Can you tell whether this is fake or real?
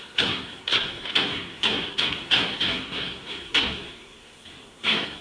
fake